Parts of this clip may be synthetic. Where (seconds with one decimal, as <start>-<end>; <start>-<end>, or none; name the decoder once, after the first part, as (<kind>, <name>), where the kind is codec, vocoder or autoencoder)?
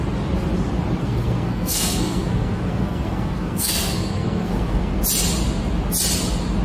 1.0-5.0 (codec, SNAC)